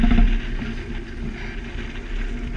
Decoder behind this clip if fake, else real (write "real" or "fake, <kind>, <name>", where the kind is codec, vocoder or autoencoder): real